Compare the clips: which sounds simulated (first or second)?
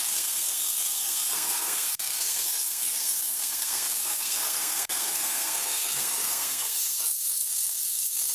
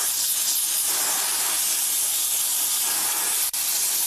first